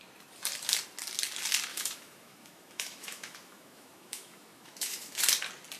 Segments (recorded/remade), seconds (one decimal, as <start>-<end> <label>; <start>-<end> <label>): 0.0-1.7 recorded; 1.7-5.2 remade; 5.2-5.8 recorded